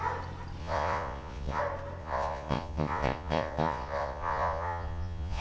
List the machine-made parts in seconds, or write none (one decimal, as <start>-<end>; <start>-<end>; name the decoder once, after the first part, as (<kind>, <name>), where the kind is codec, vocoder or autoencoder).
0.6-1.6 (vocoder, Vocos); 2.0-5.4